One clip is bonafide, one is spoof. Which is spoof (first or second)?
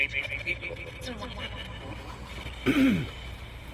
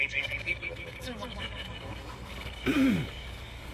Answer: second